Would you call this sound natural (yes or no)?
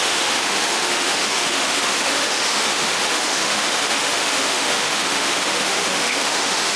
no